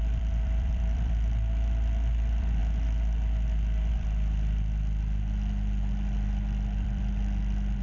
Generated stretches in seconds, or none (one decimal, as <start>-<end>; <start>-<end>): 0.0-2.6; 3.9-7.8